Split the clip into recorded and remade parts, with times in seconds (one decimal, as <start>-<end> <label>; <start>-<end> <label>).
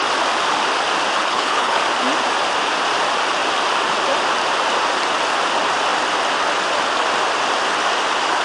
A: 0.0-1.2 recorded; 1.2-1.8 remade; 1.8-8.4 recorded